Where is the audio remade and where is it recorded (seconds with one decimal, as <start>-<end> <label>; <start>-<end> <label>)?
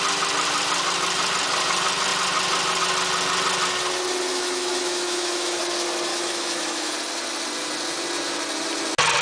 0.0-4.3 recorded; 4.3-5.6 remade; 5.6-6.1 recorded; 6.1-6.9 remade; 6.9-9.2 recorded